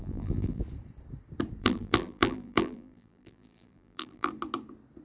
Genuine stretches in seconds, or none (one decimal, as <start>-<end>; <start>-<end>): 0.6-1.6; 4.3-5.0